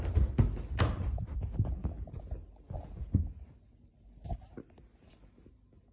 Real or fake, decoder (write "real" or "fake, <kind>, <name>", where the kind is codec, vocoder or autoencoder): real